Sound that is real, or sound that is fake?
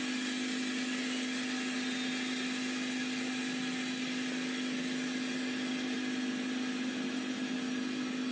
real